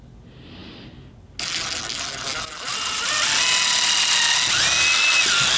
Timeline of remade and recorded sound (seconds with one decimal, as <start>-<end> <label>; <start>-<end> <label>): 0.0-5.6 recorded